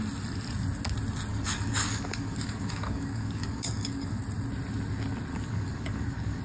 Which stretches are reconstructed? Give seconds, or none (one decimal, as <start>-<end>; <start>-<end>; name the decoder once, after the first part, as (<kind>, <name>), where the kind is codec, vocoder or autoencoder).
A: 1.3-4.2 (codec, DAC); 5.3-6.4